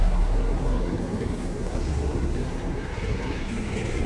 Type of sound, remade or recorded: remade